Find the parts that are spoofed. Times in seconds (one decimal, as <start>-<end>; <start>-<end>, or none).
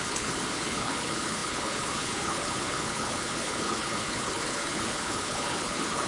0.0-6.1